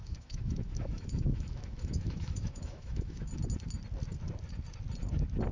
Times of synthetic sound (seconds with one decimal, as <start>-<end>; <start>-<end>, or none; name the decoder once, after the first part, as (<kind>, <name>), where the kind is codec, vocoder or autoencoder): 0.0-3.3 (autoencoder, DAC-VAE)